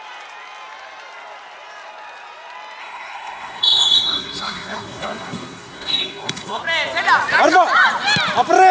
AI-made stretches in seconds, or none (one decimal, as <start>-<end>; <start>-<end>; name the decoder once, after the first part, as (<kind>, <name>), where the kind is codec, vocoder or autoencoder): 2.8-6.6 (codec, SNAC)